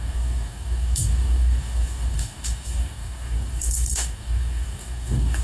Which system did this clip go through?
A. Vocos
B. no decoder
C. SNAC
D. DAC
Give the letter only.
D